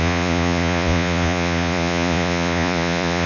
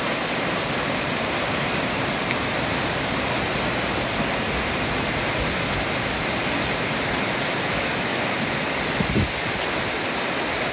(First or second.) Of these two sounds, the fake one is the first